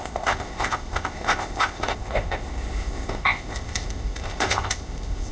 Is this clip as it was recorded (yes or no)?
no